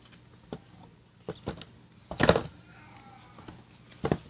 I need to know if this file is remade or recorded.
recorded